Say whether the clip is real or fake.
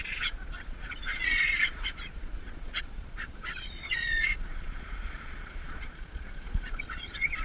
fake